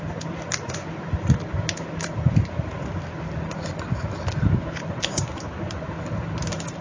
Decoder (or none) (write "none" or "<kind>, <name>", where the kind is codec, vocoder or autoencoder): none